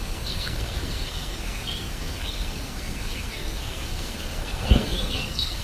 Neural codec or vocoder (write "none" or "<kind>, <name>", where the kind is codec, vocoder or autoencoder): codec, SNAC